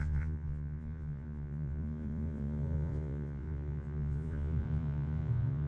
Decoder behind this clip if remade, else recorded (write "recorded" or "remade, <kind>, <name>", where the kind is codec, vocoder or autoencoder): remade, vocoder, Vocos